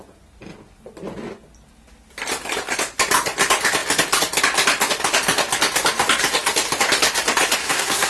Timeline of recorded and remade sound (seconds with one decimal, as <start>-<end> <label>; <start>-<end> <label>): 0.0-7.6 recorded; 7.6-8.1 remade